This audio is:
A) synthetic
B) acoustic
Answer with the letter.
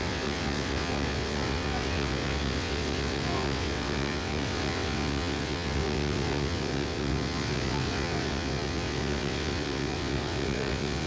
A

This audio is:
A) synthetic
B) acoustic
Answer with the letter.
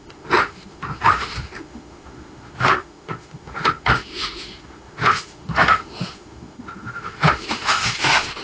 A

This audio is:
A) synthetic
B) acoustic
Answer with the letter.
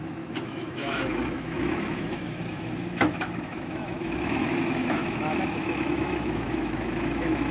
A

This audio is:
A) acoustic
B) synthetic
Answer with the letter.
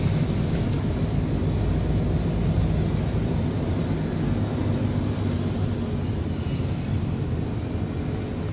A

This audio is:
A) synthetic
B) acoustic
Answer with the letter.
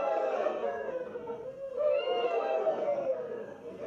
A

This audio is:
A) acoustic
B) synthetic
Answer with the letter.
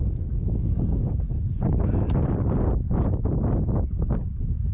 A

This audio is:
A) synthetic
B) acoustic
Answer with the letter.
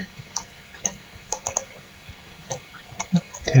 A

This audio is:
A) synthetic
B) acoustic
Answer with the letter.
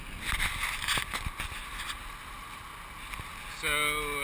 B